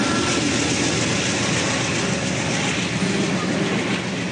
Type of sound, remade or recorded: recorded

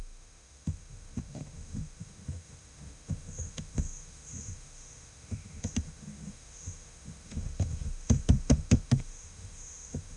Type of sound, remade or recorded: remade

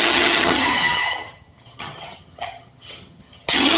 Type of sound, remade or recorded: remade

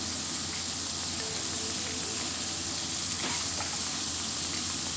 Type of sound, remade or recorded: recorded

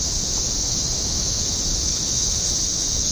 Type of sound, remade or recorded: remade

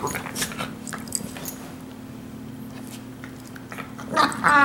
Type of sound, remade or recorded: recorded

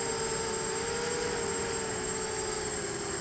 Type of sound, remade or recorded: recorded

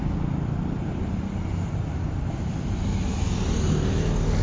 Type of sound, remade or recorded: recorded